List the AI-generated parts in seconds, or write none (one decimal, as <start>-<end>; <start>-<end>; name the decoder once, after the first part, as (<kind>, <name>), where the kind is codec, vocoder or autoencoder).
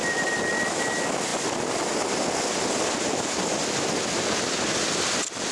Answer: none